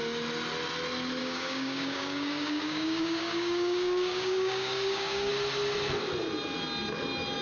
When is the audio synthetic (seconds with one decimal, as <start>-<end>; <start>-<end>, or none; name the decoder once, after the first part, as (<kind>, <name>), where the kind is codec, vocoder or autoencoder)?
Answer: 1.2-5.3 (codec, DAC)